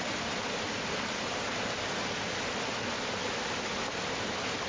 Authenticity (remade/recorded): recorded